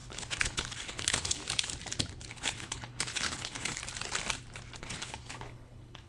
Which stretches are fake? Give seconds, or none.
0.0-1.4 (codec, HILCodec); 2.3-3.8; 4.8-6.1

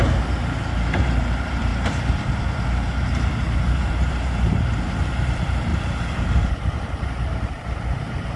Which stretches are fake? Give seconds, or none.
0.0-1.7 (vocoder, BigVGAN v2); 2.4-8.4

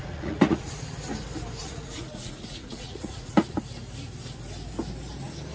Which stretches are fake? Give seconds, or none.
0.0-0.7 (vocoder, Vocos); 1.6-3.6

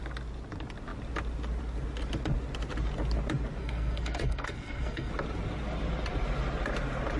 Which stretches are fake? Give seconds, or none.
3.6-5.1 (codec, SNAC)